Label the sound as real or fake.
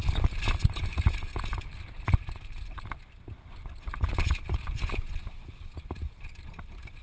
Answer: real